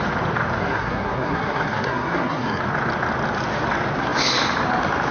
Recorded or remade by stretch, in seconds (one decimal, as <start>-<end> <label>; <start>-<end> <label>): 0.0-0.6 recorded; 0.6-2.6 remade; 2.6-5.1 recorded